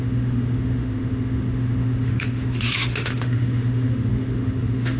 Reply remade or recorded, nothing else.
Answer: remade